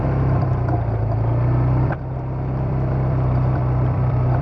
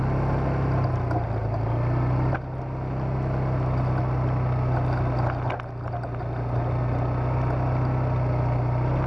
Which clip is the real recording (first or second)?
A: second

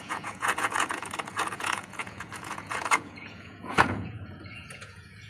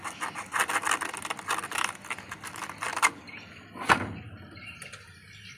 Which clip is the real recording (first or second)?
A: second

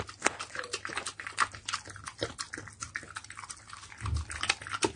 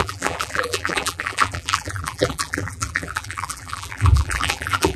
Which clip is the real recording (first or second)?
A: first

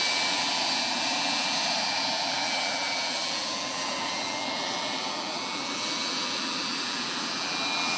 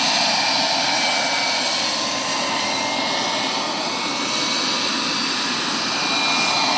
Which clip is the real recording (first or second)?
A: second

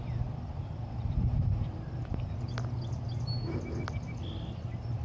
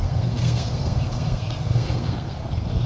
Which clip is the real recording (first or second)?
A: first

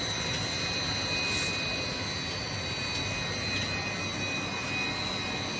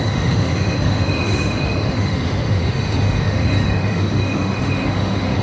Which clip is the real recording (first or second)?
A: first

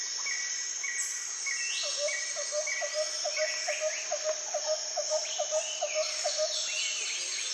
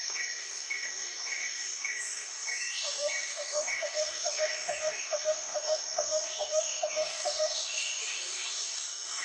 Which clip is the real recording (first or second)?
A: first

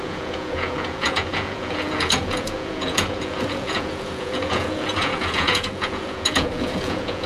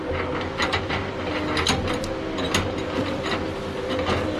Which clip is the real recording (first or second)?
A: second